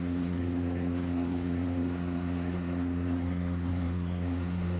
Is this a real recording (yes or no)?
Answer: no